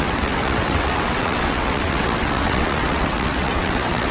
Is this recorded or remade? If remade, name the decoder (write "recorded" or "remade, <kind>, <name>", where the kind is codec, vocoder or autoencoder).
remade, vocoder, WaveNeXt